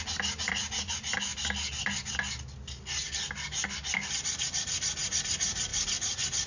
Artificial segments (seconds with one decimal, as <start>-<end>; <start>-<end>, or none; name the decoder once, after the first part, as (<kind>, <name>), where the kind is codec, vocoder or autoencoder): none